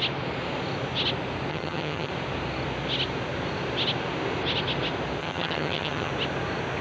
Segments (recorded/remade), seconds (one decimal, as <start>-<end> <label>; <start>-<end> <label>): 0.0-1.5 recorded; 1.5-2.1 remade; 2.1-5.2 recorded; 5.2-6.1 remade; 6.1-6.8 recorded